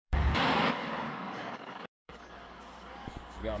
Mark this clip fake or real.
fake